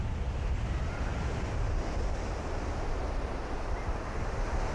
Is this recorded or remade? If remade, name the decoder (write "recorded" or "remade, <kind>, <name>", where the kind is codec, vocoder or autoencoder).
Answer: recorded